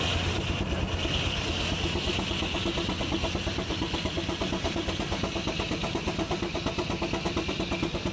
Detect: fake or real real